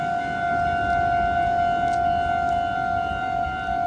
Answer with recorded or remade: recorded